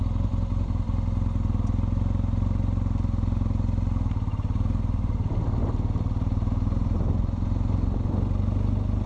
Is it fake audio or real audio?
real